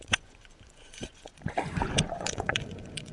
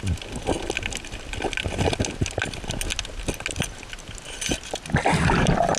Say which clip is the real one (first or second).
second